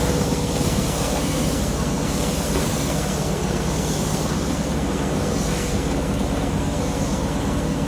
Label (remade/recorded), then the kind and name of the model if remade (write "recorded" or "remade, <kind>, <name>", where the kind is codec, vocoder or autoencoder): remade, codec, SNAC